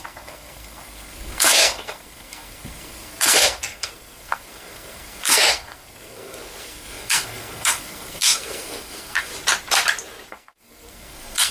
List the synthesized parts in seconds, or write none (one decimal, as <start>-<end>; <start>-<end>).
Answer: 0.0-9.3; 10.3-11.5